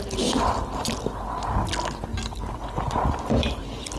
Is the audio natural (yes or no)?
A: yes